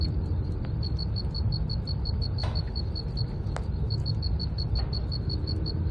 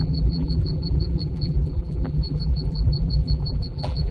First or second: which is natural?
first